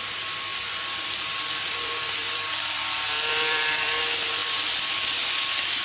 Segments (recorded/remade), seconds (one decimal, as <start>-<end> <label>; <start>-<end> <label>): 0.0-0.5 recorded; 0.5-4.0 remade; 4.0-5.8 recorded